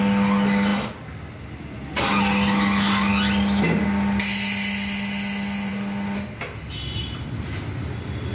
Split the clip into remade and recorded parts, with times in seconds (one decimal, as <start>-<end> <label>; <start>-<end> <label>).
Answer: 0.0-8.3 recorded